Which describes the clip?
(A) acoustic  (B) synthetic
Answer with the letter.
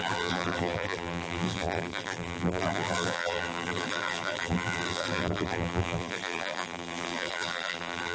B